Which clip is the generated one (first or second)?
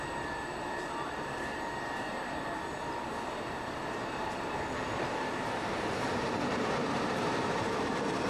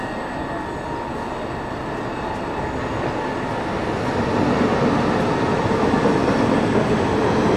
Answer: first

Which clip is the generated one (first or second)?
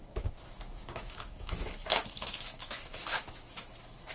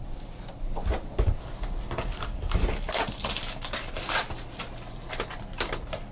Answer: first